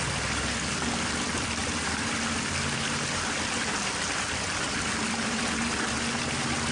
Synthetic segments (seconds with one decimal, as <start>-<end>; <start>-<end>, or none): 1.6-5.6